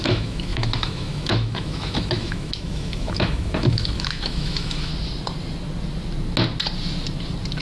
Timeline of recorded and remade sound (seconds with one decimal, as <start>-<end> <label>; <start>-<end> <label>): 0.0-4.9 remade; 4.9-7.6 recorded